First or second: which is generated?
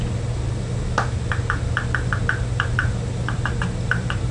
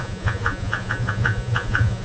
second